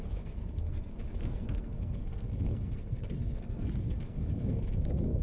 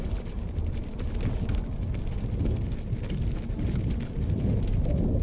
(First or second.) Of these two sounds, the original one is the second